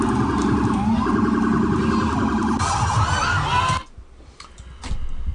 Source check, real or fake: real